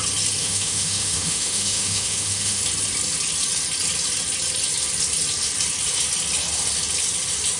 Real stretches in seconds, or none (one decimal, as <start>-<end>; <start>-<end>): 0.0-0.4; 2.6-7.6